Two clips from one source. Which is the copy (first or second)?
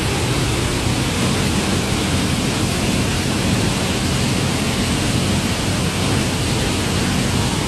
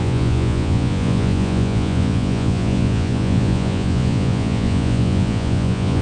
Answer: second